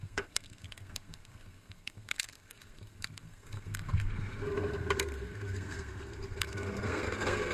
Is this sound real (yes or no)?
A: no